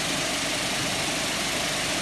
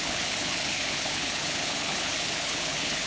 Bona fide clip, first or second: first